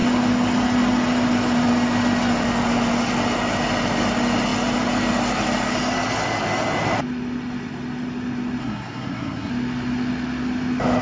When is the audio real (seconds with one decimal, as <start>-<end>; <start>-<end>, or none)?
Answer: 0.0-8.6; 9.5-11.0